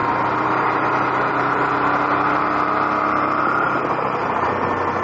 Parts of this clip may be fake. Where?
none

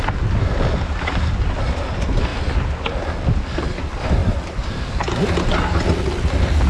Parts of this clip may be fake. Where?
none

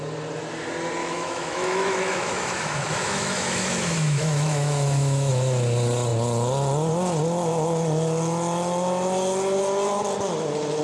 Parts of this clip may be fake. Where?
1.0-5.3 (autoencoder, DAC-VAE)

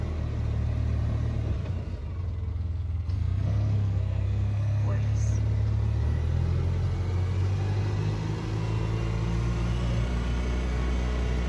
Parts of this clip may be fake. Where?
2.5-5.3 (codec, SNAC)

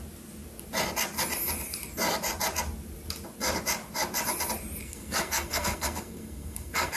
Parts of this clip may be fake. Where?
4.8-7.0 (codec, SNAC)

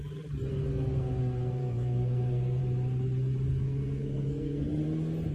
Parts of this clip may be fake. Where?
0.5-2.6 (codec, SNAC); 3.5-4.7

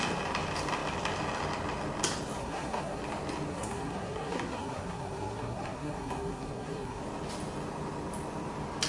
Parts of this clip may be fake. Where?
2.4-3.0 (codec, SNAC); 3.5-7.0

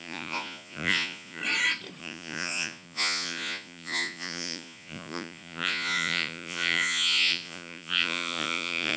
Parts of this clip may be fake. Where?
0.0-1.4 (vocoder, Vocos); 2.0-9.0